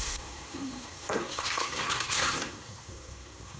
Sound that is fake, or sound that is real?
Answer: fake